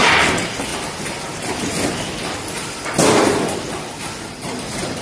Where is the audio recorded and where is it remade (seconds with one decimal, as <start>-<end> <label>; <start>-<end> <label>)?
0.0-5.0 recorded